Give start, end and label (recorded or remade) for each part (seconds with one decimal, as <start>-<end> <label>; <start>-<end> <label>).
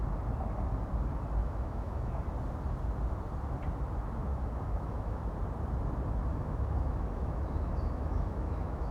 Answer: 0.0-1.4 recorded; 1.4-2.2 remade; 2.2-4.3 recorded; 4.3-5.2 remade; 5.2-6.3 recorded; 6.3-8.9 remade